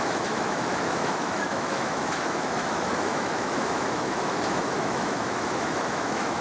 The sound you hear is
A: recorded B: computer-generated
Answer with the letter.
B